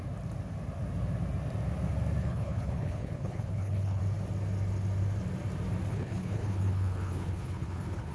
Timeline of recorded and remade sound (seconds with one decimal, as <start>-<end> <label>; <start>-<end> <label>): 0.0-2.2 recorded; 2.2-4.0 remade; 4.0-5.9 recorded; 5.9-8.1 remade